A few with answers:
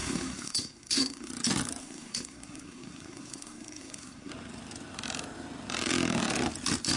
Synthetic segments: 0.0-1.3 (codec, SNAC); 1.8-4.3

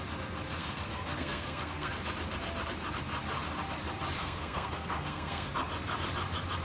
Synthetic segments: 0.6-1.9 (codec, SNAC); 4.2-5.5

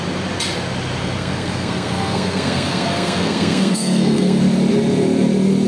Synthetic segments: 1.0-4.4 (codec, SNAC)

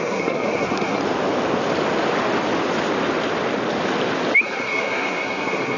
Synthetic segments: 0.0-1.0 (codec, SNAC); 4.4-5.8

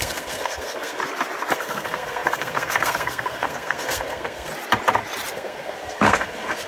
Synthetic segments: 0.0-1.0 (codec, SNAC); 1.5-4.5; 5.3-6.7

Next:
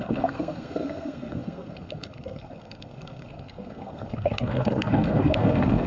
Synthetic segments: 0.0-5.9 (codec, SNAC)